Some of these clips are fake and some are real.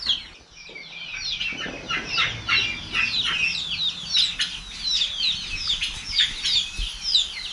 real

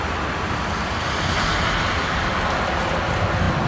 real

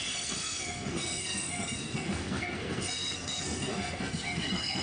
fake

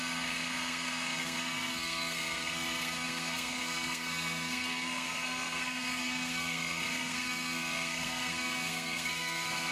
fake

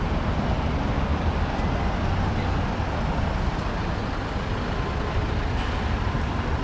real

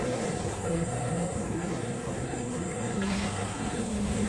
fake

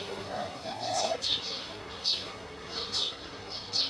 fake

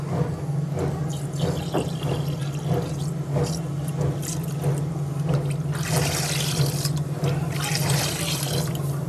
real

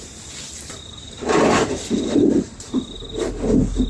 real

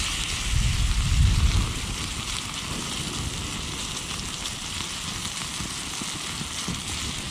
real